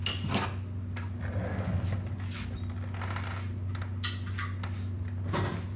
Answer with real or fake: real